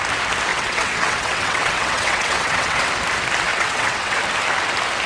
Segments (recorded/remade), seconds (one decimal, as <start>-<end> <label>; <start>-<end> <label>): 0.0-0.5 recorded; 0.5-2.9 remade; 2.9-3.5 recorded; 3.5-4.2 remade; 4.2-5.1 recorded